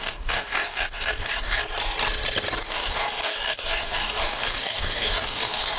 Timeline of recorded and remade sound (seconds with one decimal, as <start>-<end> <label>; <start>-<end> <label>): 0.0-1.6 remade; 1.6-2.6 recorded; 2.6-5.8 remade